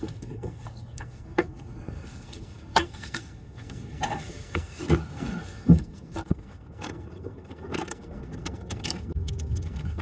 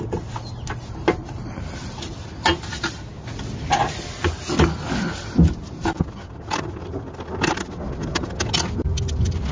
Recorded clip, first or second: second